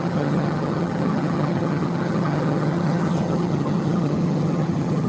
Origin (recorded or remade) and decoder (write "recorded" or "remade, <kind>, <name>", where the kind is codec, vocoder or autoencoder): remade, vocoder, HiFi-GAN